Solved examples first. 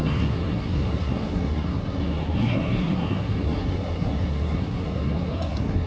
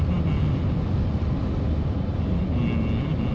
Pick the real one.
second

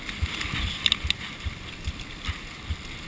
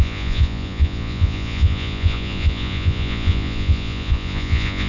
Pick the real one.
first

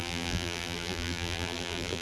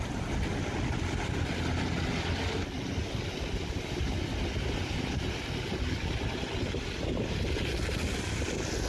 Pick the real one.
second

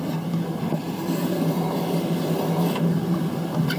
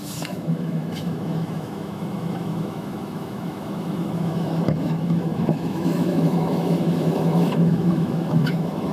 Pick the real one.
first